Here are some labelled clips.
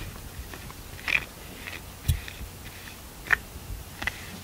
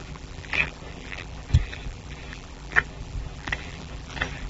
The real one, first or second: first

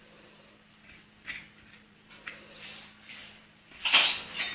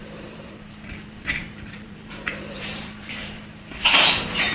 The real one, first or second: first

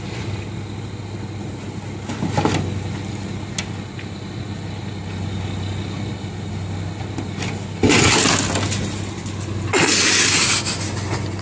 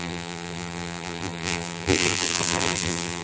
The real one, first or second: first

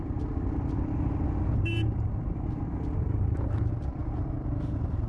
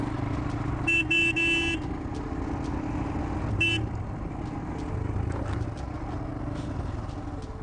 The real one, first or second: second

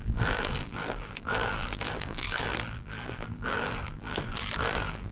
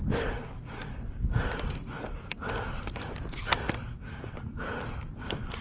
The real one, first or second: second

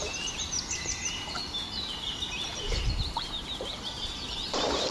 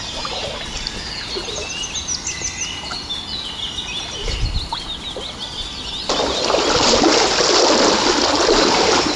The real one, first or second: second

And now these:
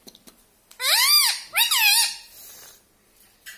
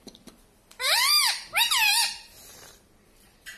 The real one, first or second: first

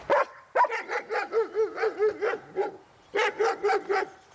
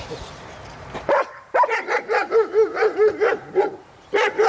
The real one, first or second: first